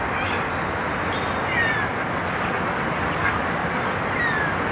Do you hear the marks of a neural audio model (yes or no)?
no